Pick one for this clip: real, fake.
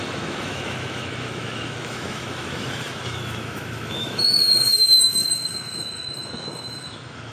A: fake